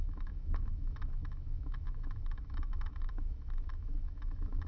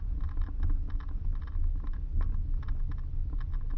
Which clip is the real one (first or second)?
second